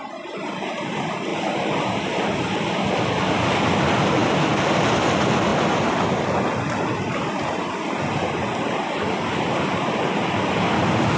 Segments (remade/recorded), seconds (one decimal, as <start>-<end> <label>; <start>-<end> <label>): 0.0-11.2 recorded